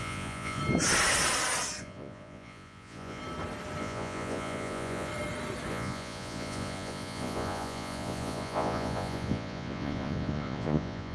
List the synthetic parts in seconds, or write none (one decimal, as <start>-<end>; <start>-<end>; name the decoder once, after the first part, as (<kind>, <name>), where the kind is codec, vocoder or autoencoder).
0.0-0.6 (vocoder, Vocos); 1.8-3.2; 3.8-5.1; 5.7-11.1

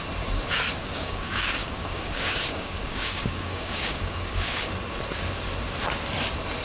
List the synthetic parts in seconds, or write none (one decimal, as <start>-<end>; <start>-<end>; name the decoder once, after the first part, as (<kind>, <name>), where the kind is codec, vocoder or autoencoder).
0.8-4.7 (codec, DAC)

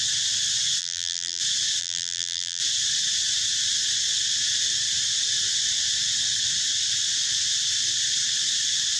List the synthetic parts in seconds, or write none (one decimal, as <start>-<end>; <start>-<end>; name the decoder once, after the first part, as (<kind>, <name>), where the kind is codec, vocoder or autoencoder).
0.8-1.4 (vocoder, BigVGAN v2); 1.8-2.6

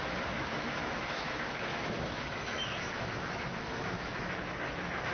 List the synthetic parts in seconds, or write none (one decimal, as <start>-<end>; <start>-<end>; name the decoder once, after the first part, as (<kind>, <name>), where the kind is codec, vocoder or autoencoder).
0.0-5.1 (autoencoder, DAC-VAE)